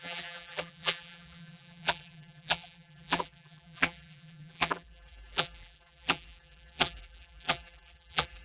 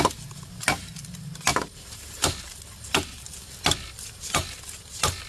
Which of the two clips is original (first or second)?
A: second